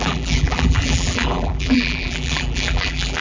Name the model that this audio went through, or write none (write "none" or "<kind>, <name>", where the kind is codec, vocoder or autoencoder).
vocoder, BigVGAN v2